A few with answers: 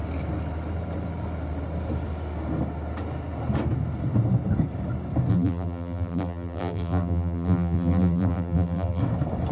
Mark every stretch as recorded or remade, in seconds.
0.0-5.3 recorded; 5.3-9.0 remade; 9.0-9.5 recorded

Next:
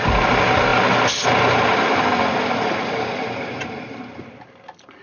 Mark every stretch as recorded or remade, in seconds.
0.0-5.0 recorded

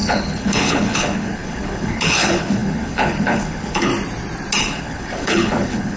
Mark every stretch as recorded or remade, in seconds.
0.0-3.9 remade; 3.9-4.6 recorded; 4.6-6.0 remade

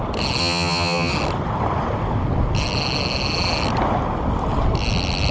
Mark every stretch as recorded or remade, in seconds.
0.0-0.4 recorded; 0.4-1.1 remade; 1.1-5.3 recorded

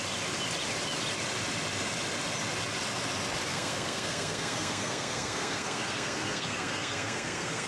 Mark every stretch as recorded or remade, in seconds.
0.0-3.5 recorded; 3.5-7.7 remade